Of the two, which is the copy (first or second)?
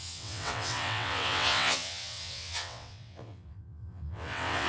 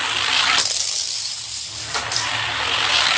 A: first